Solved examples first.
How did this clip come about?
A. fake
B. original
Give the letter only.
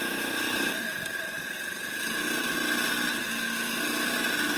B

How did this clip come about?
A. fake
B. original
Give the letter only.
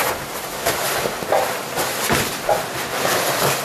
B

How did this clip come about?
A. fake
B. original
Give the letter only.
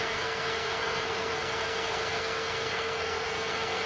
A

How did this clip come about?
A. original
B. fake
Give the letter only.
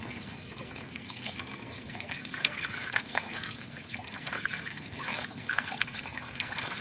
B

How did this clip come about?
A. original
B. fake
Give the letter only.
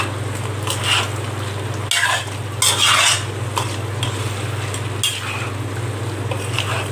A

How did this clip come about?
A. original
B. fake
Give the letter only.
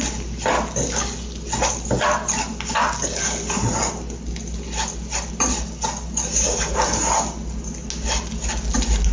A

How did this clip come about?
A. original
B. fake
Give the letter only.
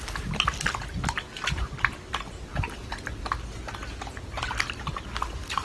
A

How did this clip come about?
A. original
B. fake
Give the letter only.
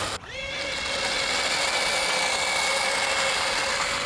A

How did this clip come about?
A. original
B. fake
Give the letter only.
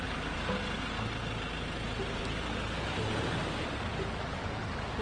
A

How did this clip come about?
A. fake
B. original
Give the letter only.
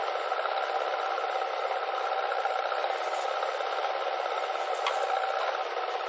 B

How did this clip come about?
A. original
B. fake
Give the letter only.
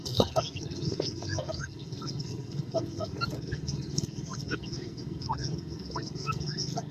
B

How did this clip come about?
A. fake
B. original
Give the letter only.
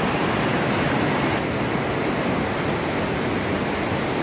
B